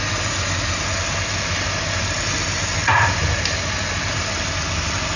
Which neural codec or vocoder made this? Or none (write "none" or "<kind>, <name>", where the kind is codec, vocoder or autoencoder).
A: none